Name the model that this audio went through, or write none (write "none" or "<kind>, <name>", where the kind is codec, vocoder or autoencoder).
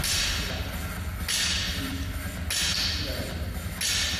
none